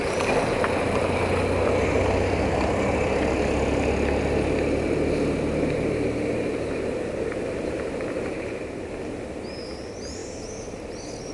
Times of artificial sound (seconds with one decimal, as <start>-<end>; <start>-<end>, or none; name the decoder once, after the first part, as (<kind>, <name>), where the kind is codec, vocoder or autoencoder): none